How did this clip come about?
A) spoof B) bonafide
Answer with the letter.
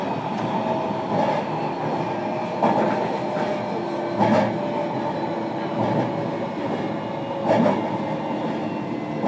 B